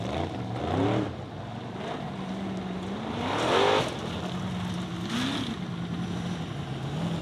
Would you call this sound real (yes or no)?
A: yes